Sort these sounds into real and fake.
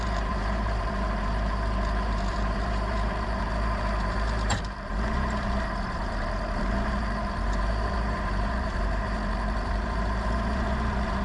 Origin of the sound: fake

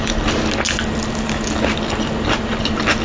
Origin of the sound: real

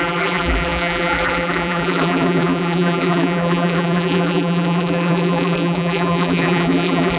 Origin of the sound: fake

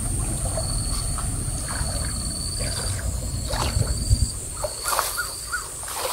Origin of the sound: fake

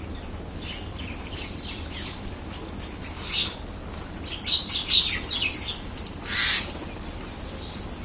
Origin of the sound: real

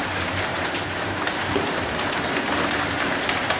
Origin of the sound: fake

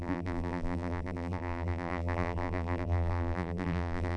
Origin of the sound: fake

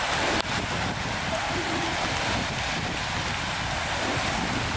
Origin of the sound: real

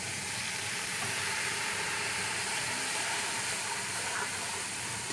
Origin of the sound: fake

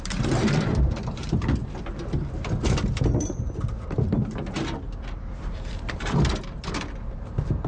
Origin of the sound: fake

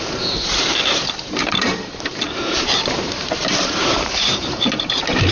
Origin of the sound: fake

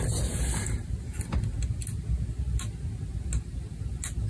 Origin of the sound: real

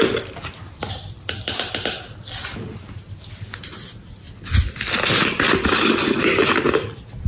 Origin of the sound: real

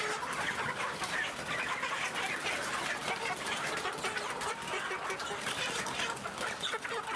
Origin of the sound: real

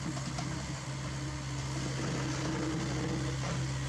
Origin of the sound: real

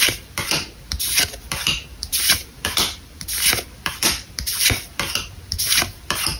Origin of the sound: fake